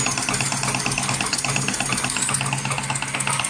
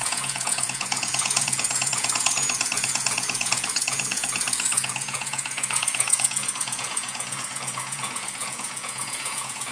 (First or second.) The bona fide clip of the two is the first